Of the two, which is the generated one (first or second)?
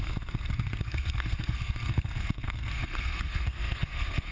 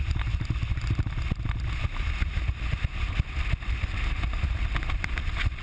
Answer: first